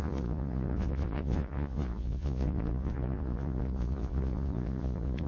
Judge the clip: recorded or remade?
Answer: remade